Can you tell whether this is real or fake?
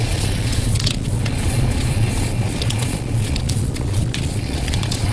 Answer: fake